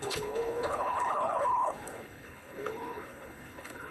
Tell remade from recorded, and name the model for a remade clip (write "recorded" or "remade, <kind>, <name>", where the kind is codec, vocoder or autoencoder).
remade, codec, HILCodec